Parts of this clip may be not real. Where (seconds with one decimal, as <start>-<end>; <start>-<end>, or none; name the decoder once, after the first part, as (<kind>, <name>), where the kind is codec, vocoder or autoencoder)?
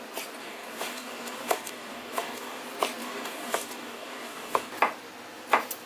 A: 0.4-2.6 (codec, DAC); 3.0-4.7